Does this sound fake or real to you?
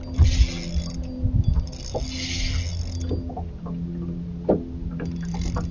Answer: real